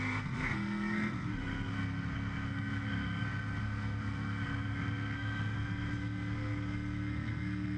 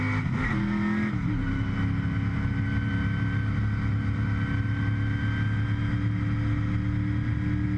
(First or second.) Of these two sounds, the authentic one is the second